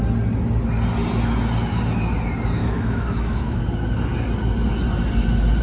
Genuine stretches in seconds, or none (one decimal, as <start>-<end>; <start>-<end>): 0.0-2.6; 3.6-5.6